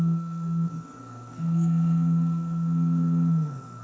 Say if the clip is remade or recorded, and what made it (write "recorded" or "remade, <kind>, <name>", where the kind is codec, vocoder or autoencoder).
remade, codec, SNAC